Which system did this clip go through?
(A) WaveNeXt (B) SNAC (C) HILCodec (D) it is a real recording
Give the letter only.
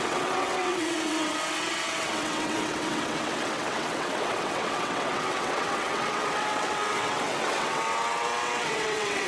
A